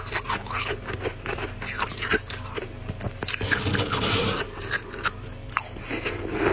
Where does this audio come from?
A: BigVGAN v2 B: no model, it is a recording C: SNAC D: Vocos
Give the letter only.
B